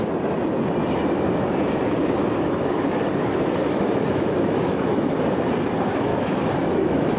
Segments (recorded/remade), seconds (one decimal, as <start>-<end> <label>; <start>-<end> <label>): 0.0-2.2 recorded; 2.2-5.1 remade; 5.1-6.1 recorded; 6.1-7.2 remade